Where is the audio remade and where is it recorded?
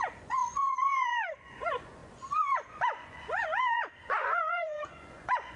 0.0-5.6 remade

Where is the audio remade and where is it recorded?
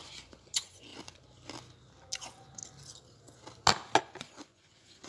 0.0-0.9 remade; 0.9-2.2 recorded; 2.2-2.6 remade; 2.6-4.0 recorded; 4.0-5.1 remade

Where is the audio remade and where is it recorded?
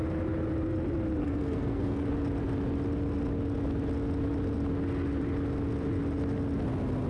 0.0-1.2 recorded; 1.2-2.1 remade; 2.1-7.1 recorded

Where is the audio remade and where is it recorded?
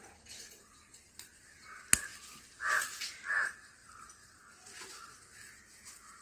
0.0-6.2 recorded